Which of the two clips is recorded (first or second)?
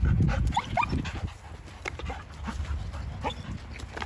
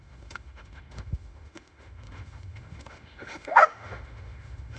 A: first